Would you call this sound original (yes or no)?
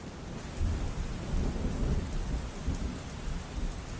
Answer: yes